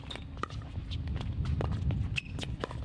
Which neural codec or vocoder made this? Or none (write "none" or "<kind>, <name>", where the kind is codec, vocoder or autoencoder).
none